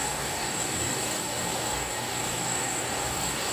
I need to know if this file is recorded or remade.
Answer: remade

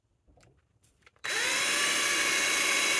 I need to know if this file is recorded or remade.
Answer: remade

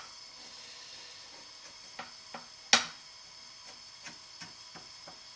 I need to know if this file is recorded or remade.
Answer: recorded